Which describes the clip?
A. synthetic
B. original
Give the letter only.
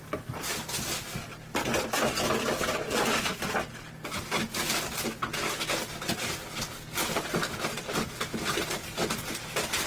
B